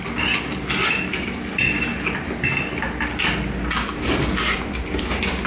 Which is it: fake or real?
real